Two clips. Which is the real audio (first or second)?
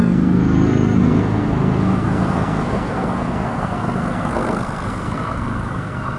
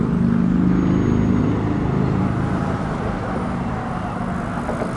second